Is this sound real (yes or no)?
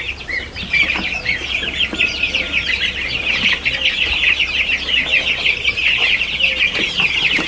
yes